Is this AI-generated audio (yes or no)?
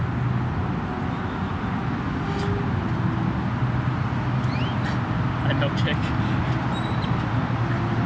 no